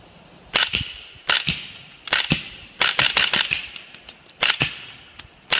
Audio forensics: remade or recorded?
recorded